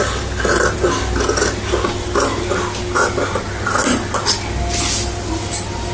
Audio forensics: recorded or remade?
recorded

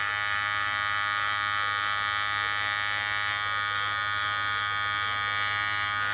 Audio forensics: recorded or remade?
recorded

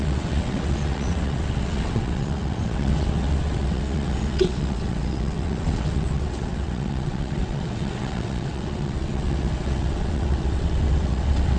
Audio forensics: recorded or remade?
remade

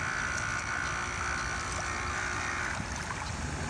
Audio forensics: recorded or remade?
recorded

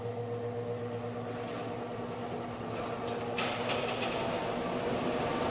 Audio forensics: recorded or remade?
recorded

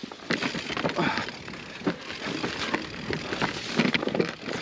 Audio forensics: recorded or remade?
recorded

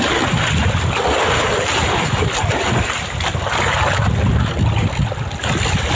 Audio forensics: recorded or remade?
recorded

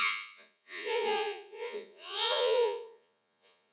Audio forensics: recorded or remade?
remade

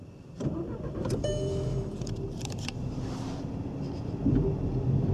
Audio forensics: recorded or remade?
remade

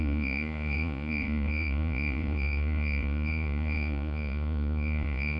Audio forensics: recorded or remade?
remade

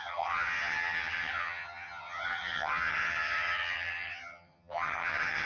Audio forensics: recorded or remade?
remade